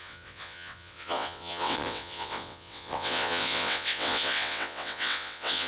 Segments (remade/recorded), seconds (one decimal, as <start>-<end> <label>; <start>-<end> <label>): 0.0-5.7 remade